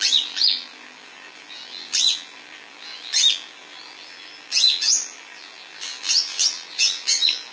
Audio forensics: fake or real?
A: fake